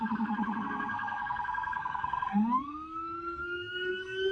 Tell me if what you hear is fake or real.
fake